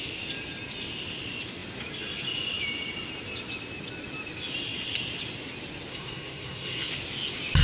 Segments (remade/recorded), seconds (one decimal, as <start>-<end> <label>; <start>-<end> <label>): 0.0-5.9 recorded; 5.9-6.9 remade; 6.9-7.6 recorded